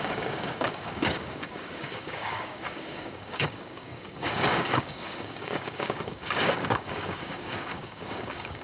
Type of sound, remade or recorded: remade